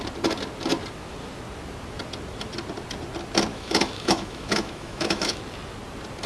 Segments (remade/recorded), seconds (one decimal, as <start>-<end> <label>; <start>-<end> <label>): 0.0-3.5 recorded; 3.5-5.4 remade; 5.4-6.3 recorded